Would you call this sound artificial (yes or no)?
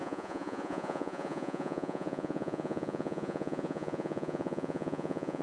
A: yes